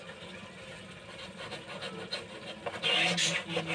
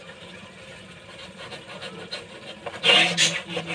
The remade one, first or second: second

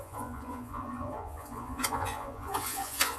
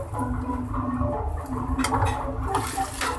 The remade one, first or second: first